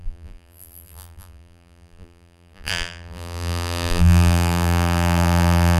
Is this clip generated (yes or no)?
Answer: yes